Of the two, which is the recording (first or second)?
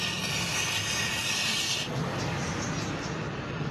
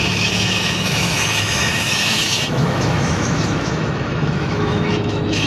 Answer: first